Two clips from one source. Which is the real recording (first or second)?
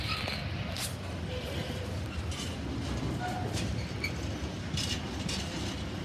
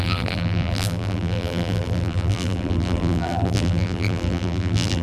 first